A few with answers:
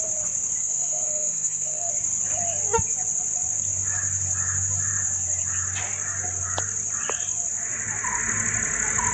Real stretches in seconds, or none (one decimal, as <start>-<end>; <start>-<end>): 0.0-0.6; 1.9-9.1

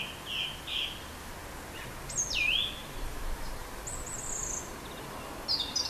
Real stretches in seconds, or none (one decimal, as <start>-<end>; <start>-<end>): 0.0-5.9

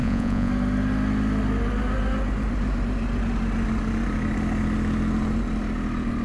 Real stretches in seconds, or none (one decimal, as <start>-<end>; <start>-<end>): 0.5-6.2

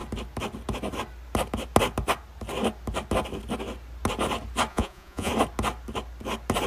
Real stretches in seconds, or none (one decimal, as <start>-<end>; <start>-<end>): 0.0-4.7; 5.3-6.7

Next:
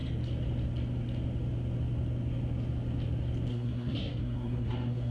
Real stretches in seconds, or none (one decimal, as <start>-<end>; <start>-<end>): 0.0-3.5